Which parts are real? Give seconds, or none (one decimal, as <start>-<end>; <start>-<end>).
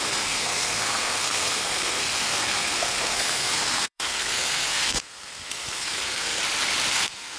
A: 6.4-6.9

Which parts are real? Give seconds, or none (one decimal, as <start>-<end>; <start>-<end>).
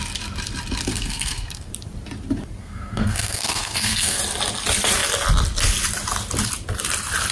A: 0.0-0.9; 1.7-2.6; 4.2-7.3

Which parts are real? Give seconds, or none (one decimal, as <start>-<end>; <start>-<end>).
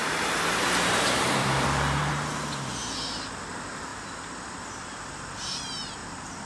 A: 2.1-6.0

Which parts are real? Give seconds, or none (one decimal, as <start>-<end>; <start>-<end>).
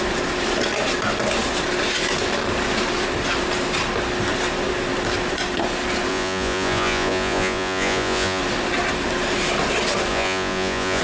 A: 0.0-6.1; 8.4-10.1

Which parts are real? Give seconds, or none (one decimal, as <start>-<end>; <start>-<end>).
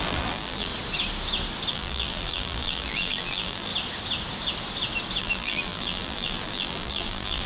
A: 0.7-1.7; 3.7-5.2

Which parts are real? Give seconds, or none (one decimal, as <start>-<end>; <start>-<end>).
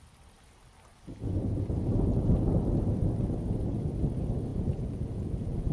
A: 0.0-4.5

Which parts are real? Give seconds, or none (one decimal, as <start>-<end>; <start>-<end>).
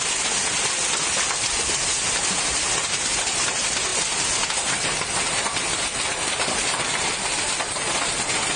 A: 0.0-8.6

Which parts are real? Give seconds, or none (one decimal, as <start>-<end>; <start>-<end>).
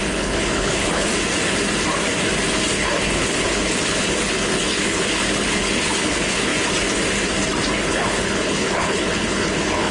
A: 1.1-2.7; 6.5-7.9